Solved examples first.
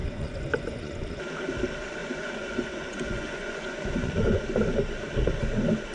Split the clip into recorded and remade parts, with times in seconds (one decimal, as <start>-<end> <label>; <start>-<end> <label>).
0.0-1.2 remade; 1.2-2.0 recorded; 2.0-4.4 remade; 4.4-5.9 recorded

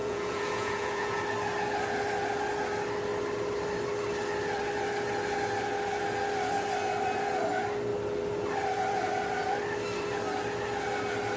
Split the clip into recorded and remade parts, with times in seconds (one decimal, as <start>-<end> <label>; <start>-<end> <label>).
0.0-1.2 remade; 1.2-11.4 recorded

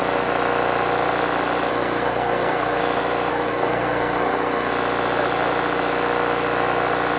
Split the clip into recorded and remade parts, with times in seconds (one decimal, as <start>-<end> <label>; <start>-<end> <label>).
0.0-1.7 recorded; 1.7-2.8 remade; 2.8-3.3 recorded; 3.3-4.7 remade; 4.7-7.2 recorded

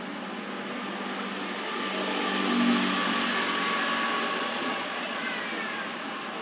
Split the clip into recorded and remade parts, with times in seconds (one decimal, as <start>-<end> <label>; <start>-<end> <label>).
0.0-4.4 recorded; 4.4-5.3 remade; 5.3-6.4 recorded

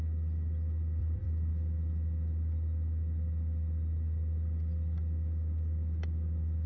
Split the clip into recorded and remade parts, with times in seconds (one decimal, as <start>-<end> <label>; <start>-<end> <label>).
0.0-1.0 recorded; 1.0-1.5 remade; 1.5-6.7 recorded

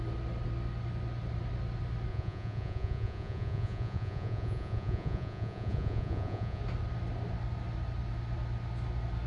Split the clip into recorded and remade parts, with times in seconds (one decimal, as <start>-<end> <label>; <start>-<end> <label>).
0.0-2.1 recorded; 2.1-6.6 remade; 6.6-9.3 recorded

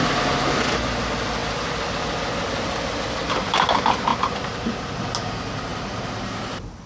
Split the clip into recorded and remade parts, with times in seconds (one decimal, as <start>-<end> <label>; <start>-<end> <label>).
0.0-6.9 recorded